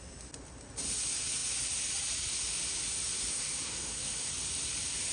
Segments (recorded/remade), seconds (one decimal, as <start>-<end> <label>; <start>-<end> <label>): 0.0-3.3 recorded; 3.3-4.3 remade; 4.3-5.1 recorded